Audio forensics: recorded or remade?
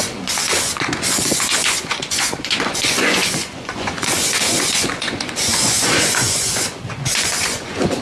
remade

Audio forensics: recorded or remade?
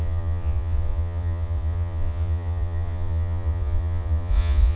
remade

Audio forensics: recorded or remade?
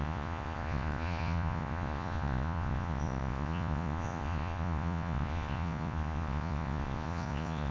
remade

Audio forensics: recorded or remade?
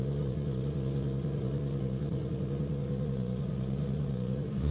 remade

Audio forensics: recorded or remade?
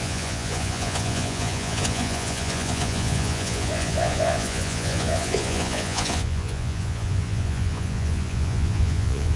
remade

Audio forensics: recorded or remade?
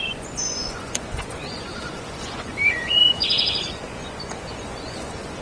remade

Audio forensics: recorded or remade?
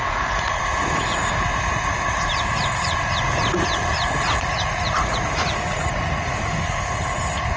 remade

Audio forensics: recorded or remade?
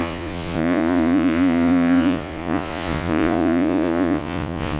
remade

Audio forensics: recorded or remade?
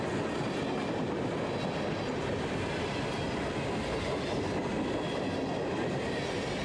recorded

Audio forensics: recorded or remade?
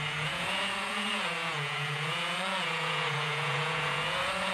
remade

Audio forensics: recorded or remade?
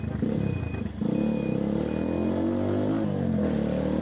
recorded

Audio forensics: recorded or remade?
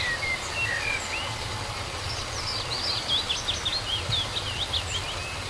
recorded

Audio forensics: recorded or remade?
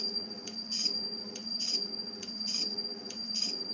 remade